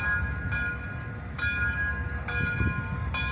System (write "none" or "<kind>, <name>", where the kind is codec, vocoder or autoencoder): none